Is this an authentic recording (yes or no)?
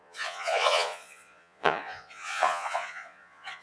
no